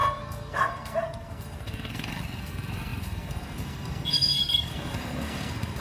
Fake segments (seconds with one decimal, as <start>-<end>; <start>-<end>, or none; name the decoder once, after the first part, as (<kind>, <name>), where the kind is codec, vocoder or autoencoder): 0.0-5.8 (codec, SNAC)